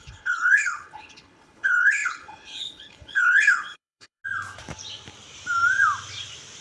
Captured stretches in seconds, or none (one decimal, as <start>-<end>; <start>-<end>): 4.2-6.6